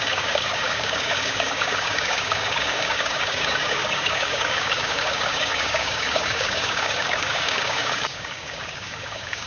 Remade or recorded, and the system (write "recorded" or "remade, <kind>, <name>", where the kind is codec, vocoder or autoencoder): remade, codec, DAC